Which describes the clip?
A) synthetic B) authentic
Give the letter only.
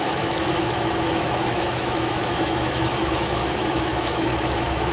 A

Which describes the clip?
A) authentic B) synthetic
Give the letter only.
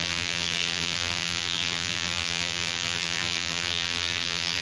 B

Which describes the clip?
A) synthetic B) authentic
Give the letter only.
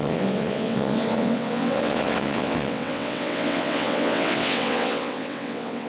A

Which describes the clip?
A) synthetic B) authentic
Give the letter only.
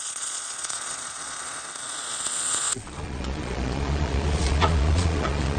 A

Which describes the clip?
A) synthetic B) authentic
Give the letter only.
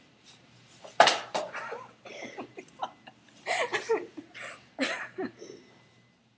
A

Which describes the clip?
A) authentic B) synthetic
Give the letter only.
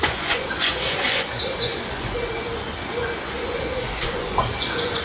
B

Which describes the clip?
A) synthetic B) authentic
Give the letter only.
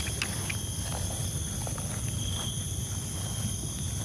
B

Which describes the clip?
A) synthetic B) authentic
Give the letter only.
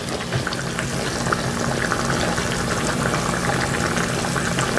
B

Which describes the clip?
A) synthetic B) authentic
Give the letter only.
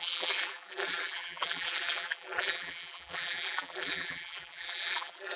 A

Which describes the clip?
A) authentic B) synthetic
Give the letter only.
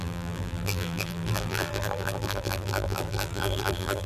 B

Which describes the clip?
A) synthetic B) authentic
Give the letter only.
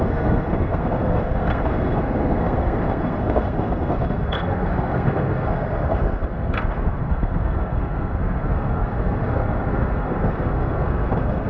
A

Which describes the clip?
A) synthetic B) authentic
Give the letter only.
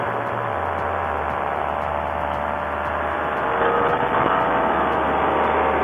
B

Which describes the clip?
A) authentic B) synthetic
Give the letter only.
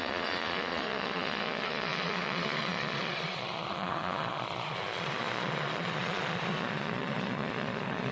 B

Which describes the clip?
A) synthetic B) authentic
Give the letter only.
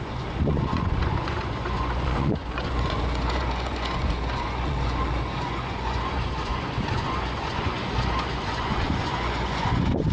A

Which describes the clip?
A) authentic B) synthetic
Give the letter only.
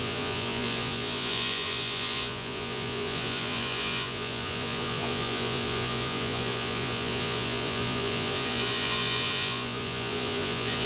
B